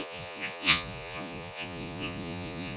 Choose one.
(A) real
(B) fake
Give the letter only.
B